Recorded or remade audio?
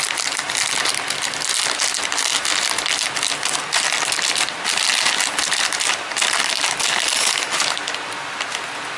recorded